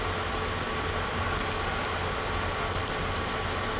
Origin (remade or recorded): recorded